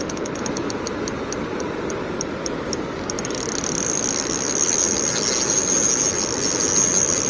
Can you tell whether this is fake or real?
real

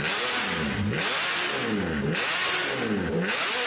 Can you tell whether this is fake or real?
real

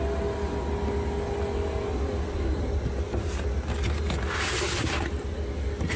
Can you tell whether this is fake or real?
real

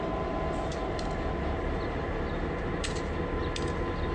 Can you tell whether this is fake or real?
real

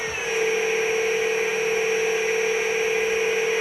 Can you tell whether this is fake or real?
real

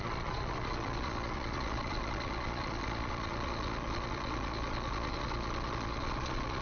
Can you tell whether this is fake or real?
fake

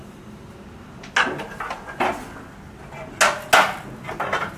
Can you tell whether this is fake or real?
real